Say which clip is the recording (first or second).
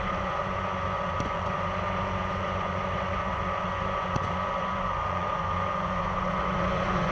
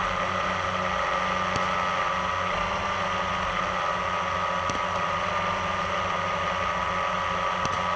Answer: second